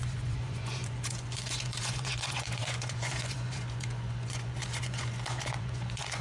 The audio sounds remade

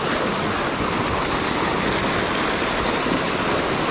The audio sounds recorded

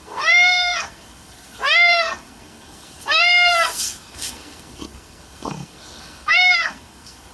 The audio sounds remade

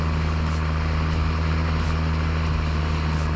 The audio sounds recorded